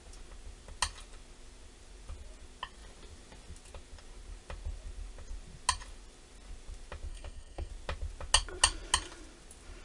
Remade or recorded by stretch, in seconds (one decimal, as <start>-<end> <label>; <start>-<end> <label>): 0.0-7.1 recorded; 7.1-7.7 remade; 7.7-9.8 recorded